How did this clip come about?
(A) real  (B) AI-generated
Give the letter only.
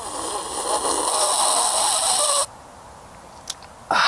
A